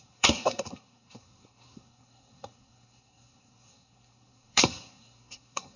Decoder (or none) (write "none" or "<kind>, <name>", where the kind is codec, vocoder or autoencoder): codec, SNAC